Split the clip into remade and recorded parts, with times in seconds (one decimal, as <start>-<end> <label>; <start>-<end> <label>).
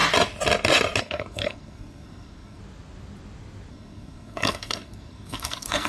0.0-1.0 recorded; 1.0-2.6 remade; 2.6-3.7 recorded; 3.7-5.9 remade